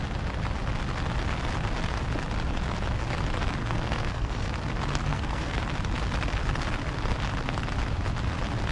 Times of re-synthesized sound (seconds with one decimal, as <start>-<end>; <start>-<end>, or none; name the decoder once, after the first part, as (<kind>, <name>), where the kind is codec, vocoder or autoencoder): 3.6-4.5 (codec, SNAC); 5.1-5.6